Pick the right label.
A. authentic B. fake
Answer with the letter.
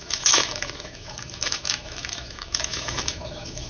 B